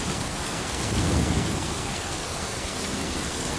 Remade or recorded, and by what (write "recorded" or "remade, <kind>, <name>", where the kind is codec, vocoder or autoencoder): remade, codec, SNAC